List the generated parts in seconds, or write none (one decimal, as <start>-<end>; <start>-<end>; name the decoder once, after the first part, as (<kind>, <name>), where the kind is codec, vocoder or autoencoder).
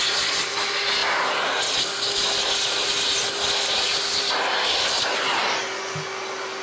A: none